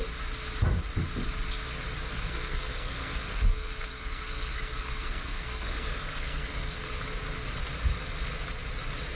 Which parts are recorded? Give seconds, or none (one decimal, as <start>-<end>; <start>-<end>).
0.0-2.1; 6.9-9.2